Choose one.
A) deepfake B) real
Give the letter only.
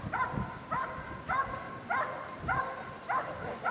B